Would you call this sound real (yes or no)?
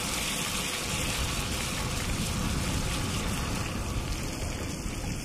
yes